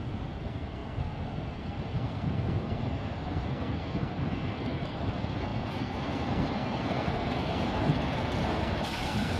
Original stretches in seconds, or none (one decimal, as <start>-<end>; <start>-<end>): none